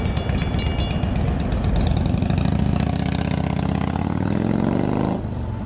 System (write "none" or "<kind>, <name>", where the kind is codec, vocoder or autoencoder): none